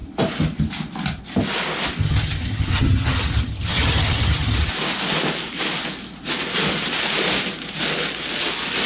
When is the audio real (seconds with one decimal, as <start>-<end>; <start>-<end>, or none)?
0.0-2.0; 4.7-8.9